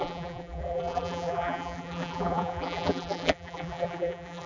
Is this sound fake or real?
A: fake